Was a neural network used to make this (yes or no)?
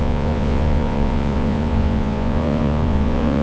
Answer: yes